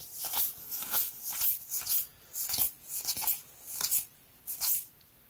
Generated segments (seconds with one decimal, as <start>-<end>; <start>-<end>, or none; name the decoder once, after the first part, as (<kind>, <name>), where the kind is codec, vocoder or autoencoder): 0.6-1.2 (codec, DAC)